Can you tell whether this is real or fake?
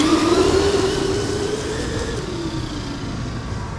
real